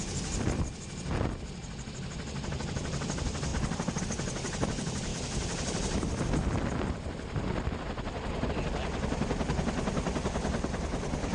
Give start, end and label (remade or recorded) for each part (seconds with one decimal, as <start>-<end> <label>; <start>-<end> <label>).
0.0-11.3 recorded